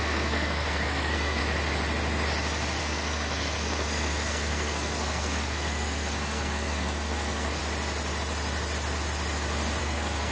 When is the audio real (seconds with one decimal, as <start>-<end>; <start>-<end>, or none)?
1.4-2.8; 7.6-9.8